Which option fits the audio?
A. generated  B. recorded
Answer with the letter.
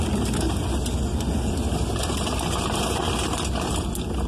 A